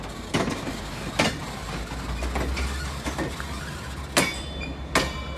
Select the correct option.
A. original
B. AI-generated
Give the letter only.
A